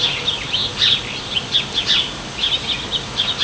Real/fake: real